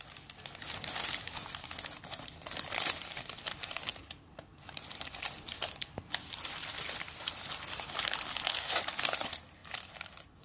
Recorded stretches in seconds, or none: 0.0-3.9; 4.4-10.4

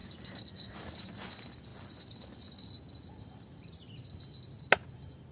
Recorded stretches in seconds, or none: 0.0-5.3